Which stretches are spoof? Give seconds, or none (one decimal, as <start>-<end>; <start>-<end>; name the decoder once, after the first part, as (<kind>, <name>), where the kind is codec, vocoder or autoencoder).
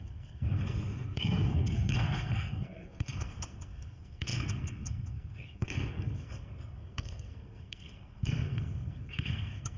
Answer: 0.0-9.8 (codec, SNAC)